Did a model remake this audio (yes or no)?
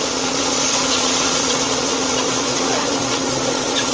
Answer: yes